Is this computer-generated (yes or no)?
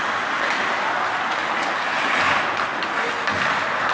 no